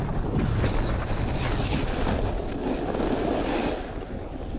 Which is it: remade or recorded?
recorded